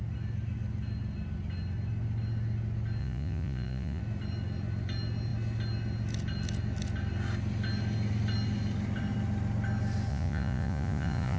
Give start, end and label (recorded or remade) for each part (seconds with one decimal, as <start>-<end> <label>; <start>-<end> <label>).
0.0-3.0 recorded; 3.0-4.0 remade; 4.0-10.1 recorded; 10.1-11.4 remade